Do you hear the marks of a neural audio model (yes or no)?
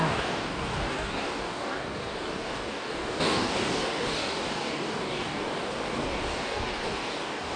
yes